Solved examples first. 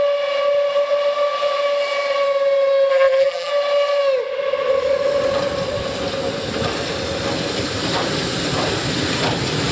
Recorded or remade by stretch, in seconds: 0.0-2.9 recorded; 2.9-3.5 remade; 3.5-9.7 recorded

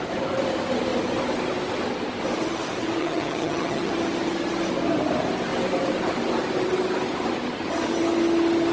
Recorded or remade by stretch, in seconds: 0.0-3.0 recorded; 3.0-3.9 remade; 3.9-8.7 recorded

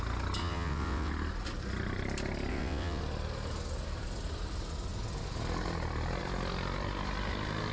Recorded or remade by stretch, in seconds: 0.0-0.4 recorded; 0.4-1.1 remade; 1.1-2.5 recorded; 2.5-3.0 remade; 3.0-7.7 recorded

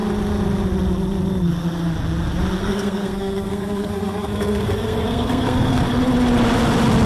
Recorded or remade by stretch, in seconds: 0.0-2.6 recorded; 2.6-5.8 remade; 5.8-7.1 recorded

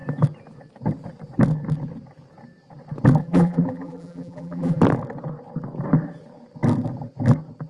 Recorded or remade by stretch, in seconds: 0.0-3.2 recorded; 3.2-4.8 remade; 4.8-7.7 recorded

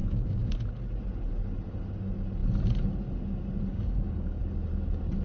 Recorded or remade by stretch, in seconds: 0.0-0.6 remade; 0.6-3.7 recorded; 3.7-4.4 remade; 4.4-5.2 recorded

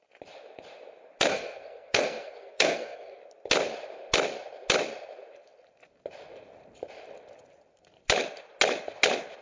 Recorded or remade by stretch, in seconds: 0.0-1.3 recorded; 1.3-3.2 remade; 3.2-9.4 recorded